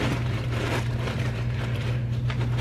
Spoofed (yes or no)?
yes